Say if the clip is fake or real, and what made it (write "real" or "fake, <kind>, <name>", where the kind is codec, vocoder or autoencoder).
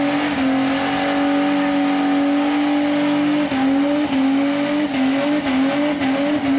real